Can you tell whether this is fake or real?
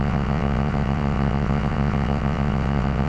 fake